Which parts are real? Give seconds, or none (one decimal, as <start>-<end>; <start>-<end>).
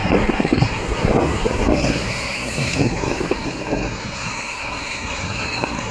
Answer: none